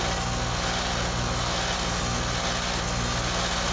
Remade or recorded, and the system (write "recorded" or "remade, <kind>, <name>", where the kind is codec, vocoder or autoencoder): recorded